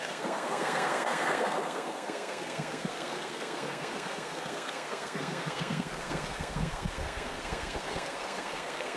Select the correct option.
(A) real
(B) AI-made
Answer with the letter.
B